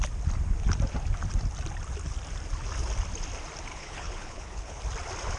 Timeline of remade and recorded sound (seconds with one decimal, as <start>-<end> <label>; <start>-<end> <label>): 0.0-3.7 recorded; 3.7-4.8 remade; 4.8-5.4 recorded